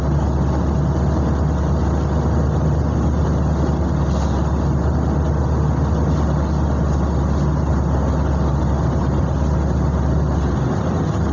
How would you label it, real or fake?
real